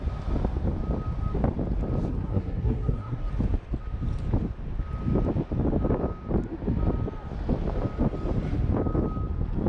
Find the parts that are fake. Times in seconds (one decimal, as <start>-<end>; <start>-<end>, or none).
2.1-3.3